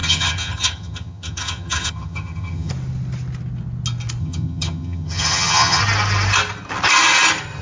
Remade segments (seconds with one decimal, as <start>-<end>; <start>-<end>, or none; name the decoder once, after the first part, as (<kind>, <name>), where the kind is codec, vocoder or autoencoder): 0.0-2.7 (vocoder, HiFi-GAN); 4.2-5.8

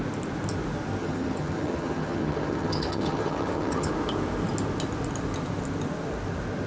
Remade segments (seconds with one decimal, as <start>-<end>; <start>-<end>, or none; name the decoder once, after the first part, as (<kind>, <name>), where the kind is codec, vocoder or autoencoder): 1.0-3.9 (vocoder, HiFi-GAN)